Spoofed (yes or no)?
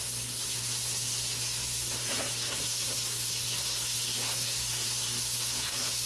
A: yes